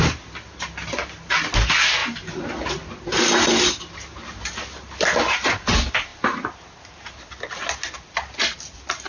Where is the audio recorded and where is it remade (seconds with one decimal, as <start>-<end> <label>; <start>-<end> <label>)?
0.0-9.1 recorded